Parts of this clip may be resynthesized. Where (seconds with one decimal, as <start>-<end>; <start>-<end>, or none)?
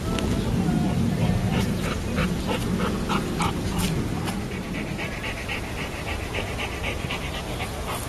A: 6.0-7.1